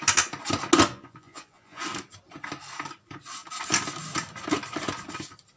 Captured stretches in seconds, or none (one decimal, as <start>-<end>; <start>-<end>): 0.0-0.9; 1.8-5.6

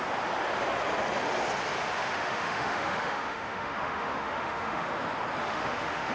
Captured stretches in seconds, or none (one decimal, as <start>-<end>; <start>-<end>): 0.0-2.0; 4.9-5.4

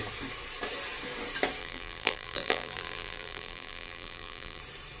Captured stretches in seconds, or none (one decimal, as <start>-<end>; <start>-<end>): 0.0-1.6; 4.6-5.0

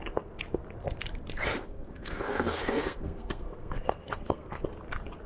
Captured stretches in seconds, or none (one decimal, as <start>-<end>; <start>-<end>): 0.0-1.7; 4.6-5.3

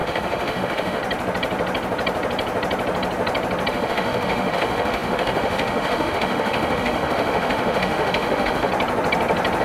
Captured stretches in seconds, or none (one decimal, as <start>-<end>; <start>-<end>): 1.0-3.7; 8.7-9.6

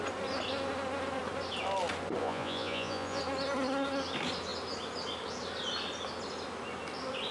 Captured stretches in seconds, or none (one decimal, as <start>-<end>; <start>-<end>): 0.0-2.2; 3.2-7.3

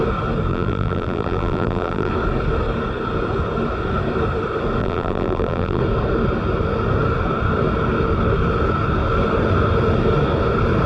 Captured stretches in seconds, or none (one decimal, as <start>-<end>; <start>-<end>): 0.0-0.5; 2.1-4.8; 5.8-10.9

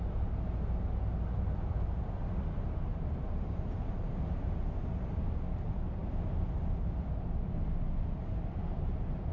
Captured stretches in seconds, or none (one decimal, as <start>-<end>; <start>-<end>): 0.0-2.9; 4.4-9.3